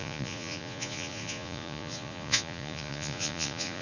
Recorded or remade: remade